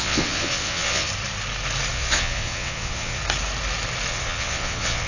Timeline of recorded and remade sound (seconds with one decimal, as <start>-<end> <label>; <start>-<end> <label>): 0.0-1.1 remade; 1.1-1.9 recorded; 1.9-3.2 remade; 3.2-4.1 recorded; 4.1-5.1 remade